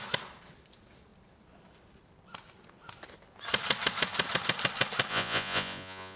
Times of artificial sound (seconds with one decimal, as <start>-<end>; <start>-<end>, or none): 5.1-6.2